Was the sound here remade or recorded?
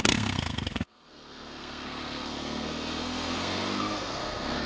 remade